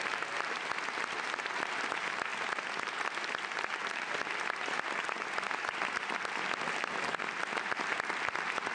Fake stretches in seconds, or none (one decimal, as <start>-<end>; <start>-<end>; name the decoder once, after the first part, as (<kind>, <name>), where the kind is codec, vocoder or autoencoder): none